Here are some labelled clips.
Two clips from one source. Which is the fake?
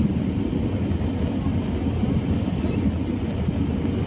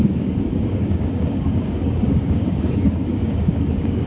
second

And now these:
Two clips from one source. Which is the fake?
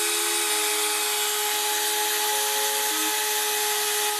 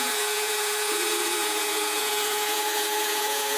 second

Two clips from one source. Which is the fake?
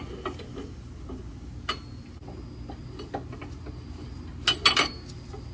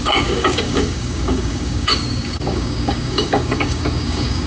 second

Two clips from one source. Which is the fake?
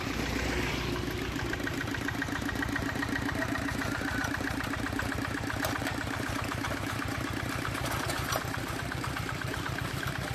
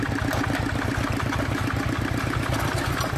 first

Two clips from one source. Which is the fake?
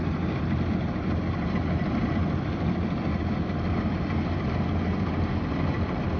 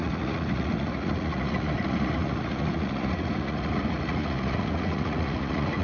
second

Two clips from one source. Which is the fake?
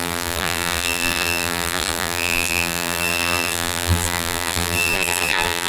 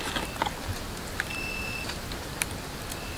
first